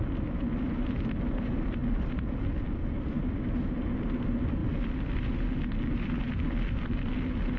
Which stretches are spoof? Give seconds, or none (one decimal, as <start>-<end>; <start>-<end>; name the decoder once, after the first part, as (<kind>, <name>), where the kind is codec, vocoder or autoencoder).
none